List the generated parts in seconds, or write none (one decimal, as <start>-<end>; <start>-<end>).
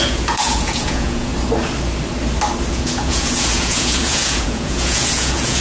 0.0-1.3; 2.7-5.6